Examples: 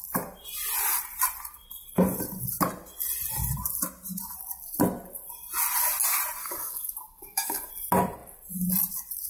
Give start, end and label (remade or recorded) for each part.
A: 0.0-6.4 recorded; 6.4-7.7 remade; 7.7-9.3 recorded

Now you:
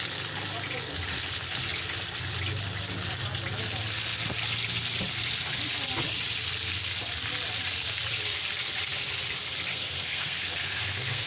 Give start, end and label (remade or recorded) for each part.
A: 0.0-9.7 recorded; 9.7-11.3 remade

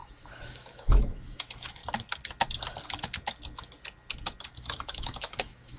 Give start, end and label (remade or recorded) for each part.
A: 0.0-1.8 remade; 1.8-4.4 recorded; 4.4-5.8 remade

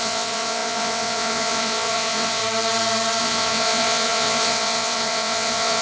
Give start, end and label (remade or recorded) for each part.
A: 0.0-2.4 remade; 2.4-3.2 recorded; 3.2-5.8 remade